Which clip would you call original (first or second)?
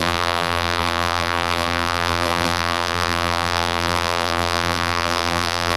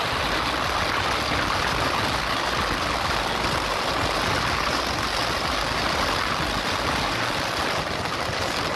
second